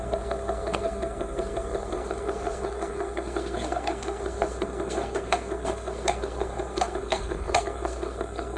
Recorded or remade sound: remade